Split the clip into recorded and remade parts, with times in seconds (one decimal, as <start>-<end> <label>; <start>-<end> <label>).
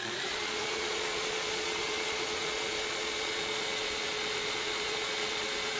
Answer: 0.0-5.8 remade